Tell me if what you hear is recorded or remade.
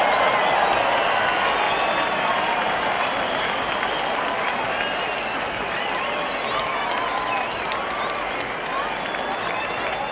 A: recorded